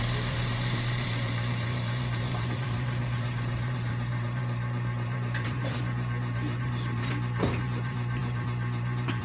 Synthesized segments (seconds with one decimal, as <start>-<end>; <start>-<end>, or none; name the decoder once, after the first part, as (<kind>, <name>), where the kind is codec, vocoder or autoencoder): 0.0-9.2 (vocoder, BigVGAN v2)